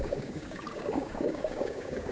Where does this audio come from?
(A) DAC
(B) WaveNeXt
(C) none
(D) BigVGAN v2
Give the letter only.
A